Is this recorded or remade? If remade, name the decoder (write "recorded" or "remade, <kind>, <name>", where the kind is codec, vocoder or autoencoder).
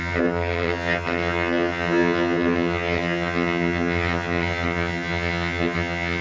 remade, vocoder, HiFi-GAN